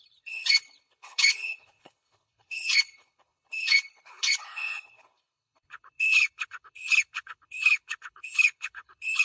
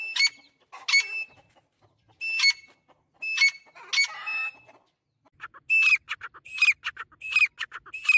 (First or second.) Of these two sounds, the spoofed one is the first